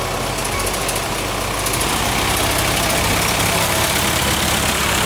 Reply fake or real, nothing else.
real